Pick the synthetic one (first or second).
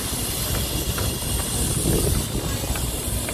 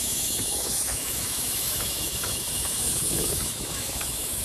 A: second